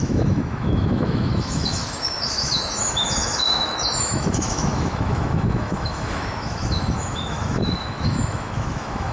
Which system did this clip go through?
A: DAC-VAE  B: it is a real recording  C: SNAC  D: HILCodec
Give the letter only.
A